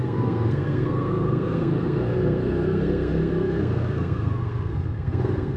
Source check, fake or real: fake